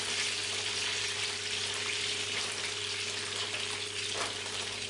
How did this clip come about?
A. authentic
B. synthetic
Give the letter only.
A